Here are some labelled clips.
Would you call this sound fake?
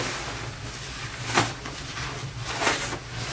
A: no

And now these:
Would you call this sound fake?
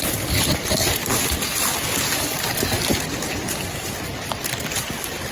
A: no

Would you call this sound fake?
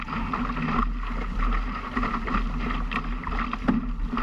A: no